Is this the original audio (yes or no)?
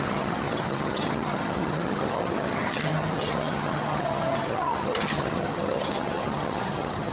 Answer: no